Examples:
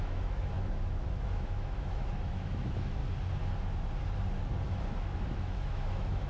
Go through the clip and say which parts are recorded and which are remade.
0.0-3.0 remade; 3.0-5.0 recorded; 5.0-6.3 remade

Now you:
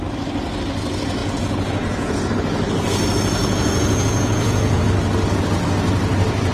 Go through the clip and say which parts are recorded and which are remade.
0.0-1.2 recorded; 1.2-2.3 remade; 2.3-3.4 recorded; 3.4-4.8 remade; 4.8-6.5 recorded